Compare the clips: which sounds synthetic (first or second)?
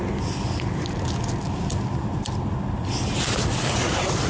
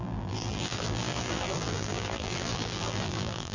second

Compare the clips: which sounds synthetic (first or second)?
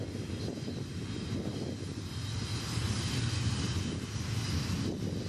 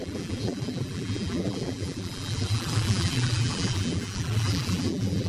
second